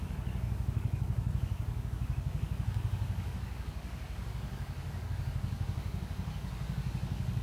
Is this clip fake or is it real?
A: fake